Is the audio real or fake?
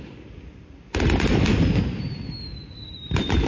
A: real